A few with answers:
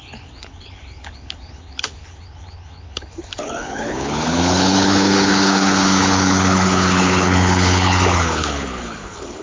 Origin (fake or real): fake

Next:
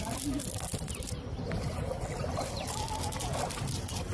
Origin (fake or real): real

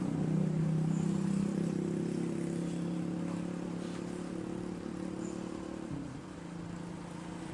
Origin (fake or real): real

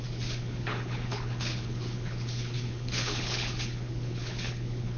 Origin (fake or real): fake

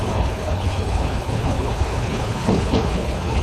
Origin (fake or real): fake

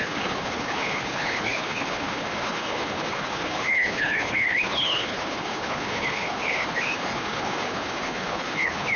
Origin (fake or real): fake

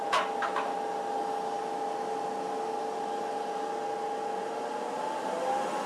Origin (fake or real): real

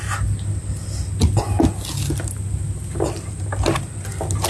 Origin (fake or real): real